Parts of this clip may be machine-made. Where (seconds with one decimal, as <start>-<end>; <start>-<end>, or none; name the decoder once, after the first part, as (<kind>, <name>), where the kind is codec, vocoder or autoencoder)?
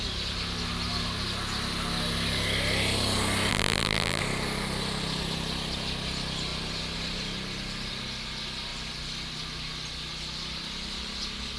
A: 3.5-4.2 (vocoder, BigVGAN v2)